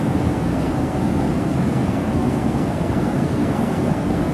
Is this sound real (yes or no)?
no